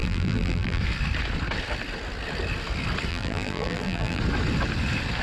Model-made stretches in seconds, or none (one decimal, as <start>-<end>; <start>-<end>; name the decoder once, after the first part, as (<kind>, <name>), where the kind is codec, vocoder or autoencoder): 0.0-0.8 (vocoder, BigVGAN v2); 3.1-4.2